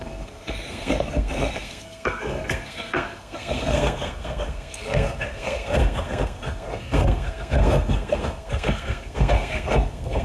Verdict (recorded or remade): remade